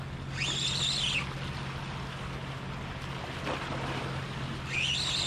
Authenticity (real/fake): real